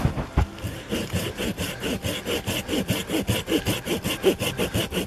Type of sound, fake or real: real